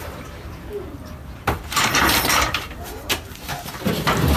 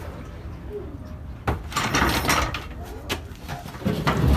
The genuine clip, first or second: second